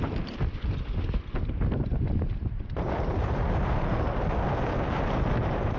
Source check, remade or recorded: recorded